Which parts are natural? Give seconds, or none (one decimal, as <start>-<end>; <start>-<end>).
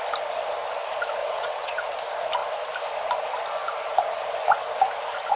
0.0-1.2; 1.9-5.4